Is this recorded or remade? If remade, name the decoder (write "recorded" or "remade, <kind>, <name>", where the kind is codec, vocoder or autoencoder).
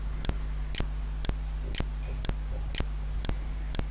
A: recorded